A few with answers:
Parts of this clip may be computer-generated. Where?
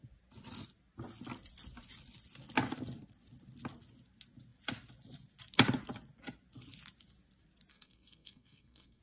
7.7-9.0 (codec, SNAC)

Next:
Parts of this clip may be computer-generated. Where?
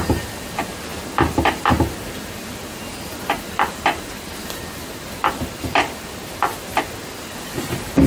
none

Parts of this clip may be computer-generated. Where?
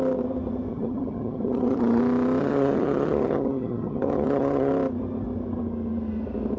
0.7-2.0 (vocoder, HiFi-GAN); 2.4-4.7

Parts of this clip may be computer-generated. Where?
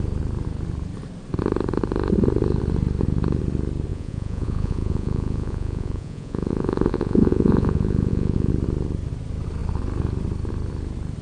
3.9-8.5 (vocoder, Vocos)